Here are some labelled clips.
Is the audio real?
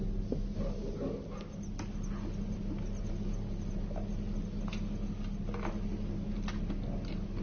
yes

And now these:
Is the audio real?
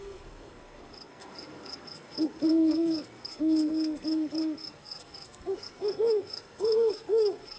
no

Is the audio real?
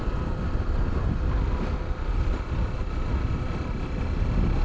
yes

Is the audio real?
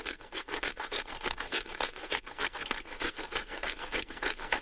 no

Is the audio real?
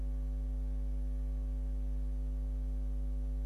yes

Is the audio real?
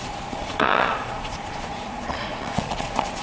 no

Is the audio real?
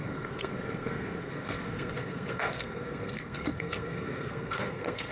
no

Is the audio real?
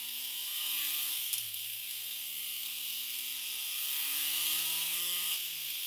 no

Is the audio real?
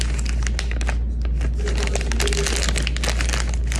yes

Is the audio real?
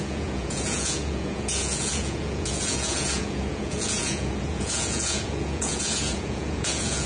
no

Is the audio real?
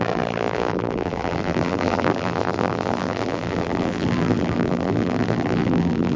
no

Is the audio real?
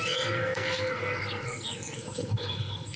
no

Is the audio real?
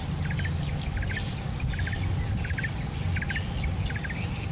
yes